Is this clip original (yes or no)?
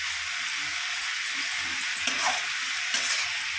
yes